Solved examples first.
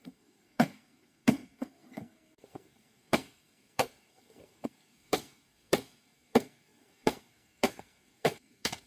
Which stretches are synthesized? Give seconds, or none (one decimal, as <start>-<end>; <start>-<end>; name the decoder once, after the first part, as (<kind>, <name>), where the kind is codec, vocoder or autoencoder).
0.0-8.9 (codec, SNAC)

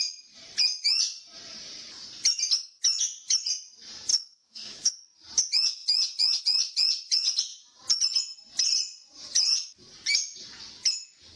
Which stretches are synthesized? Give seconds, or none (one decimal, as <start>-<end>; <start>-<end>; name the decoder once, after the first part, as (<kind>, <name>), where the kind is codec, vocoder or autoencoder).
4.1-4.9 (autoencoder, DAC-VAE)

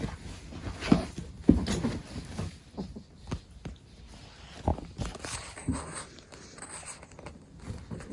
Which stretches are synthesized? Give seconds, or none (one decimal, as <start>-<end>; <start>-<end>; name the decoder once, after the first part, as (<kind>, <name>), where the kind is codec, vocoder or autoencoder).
none